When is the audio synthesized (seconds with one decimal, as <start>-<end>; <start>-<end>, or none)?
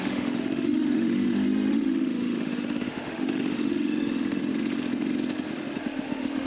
0.0-4.4; 5.8-6.5